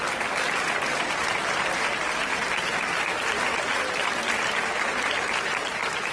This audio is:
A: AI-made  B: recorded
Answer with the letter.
B